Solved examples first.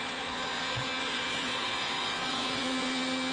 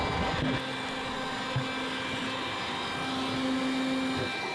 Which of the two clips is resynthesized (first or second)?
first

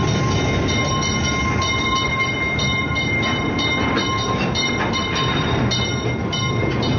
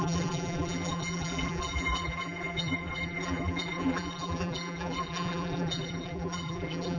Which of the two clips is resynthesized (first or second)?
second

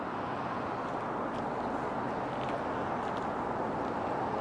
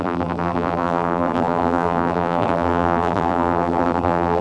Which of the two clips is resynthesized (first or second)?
second